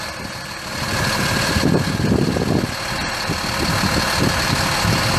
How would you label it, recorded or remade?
recorded